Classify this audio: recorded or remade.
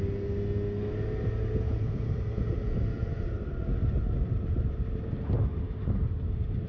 recorded